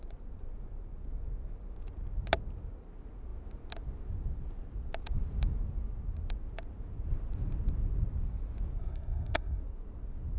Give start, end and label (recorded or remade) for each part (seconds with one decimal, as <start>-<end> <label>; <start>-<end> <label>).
0.0-8.8 recorded; 8.8-9.6 remade; 9.6-10.4 recorded